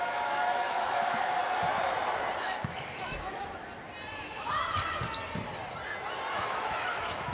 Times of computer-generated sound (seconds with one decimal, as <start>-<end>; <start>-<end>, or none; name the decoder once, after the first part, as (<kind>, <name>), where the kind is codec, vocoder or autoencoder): 0.0-1.4 (autoencoder, DAC-VAE); 2.4-3.6; 6.3-7.3